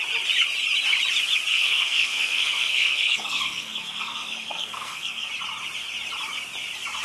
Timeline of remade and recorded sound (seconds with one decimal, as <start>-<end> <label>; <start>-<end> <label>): 0.0-1.5 recorded; 1.5-5.3 remade; 5.3-7.0 recorded